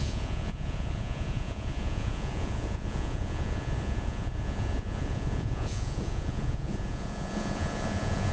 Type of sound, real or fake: fake